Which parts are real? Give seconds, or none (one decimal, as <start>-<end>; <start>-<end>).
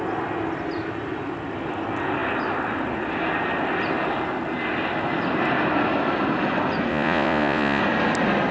0.0-6.9; 7.8-8.5